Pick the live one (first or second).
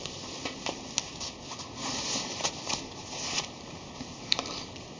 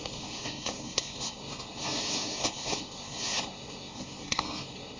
first